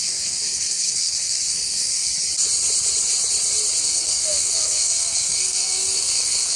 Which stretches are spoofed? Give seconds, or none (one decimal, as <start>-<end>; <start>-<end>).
0.0-2.1; 3.8-6.6